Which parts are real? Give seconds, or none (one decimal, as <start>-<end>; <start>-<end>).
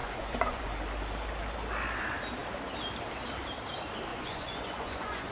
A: 0.7-4.1